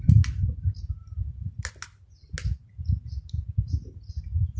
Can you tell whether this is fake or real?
real